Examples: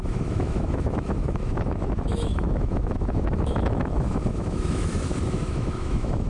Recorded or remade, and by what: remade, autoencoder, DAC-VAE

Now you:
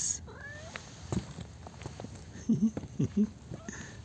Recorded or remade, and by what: recorded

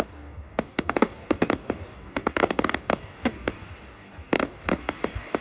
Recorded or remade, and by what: remade, codec, DAC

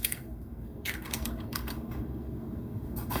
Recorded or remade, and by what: remade, codec, SNAC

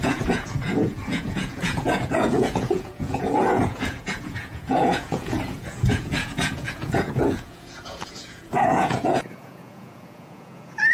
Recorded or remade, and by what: remade, vocoder, Vocos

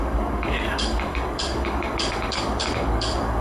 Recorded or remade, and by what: remade, codec, DAC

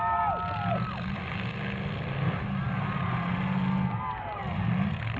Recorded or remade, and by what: recorded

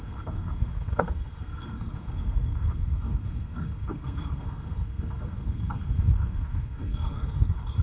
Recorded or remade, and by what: remade, codec, SNAC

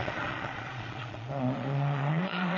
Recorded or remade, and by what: remade, vocoder, Vocos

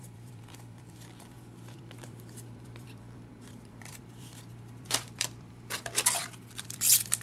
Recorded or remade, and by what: remade, vocoder, BigVGAN v2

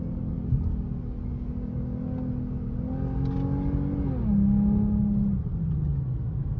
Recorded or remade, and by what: recorded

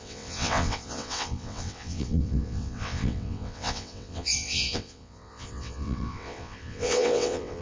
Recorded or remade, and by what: remade, vocoder, WaveNeXt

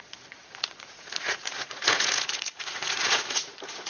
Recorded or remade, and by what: remade, vocoder, Vocos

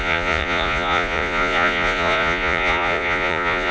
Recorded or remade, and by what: remade, vocoder, Vocos